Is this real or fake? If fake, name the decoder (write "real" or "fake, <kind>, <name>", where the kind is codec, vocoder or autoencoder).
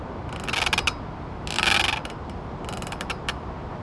real